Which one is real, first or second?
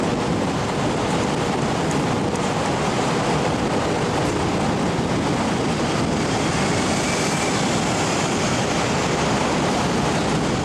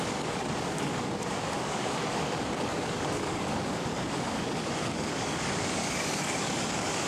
first